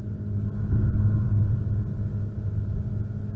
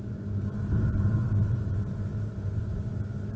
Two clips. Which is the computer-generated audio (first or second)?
second